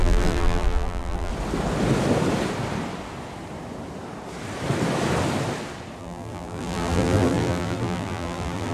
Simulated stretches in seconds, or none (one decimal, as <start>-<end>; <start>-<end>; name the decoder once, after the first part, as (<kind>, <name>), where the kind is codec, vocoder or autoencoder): 0.0-1.3 (vocoder, BigVGAN v2); 6.0-8.7